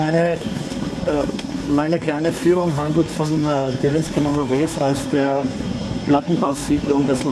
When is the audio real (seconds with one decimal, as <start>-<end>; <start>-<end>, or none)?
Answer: none